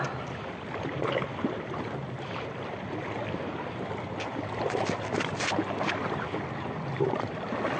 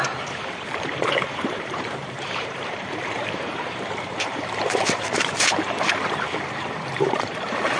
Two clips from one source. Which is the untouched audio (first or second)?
first